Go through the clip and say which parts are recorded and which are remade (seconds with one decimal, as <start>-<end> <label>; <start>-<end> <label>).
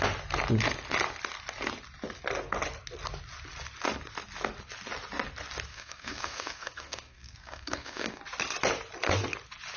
0.0-5.7 recorded; 5.7-8.2 remade; 8.2-9.8 recorded